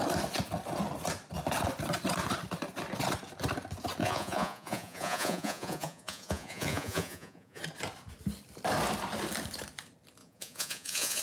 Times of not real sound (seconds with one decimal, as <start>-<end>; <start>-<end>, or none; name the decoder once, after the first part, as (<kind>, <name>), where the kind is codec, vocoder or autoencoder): 4.0-7.6 (vocoder, Vocos); 10.2-11.2